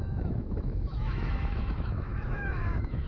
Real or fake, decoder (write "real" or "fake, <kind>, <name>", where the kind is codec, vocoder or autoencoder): fake, autoencoder, DAC-VAE